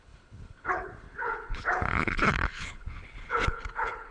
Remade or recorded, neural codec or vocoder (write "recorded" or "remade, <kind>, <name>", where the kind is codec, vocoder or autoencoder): remade, codec, HILCodec